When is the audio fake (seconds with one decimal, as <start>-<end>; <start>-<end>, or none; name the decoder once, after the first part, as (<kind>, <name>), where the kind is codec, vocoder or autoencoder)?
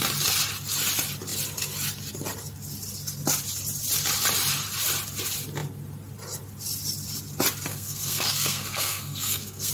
7.7-9.7 (codec, SNAC)